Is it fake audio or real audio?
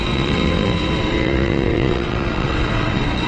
fake